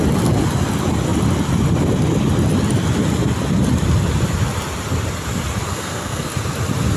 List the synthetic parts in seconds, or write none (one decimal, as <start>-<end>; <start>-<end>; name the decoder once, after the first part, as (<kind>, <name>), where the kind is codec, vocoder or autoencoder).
5.7-6.3 (codec, SNAC)